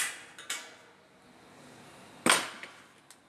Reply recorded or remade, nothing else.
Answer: recorded